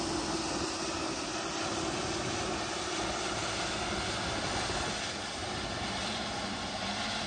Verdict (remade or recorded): recorded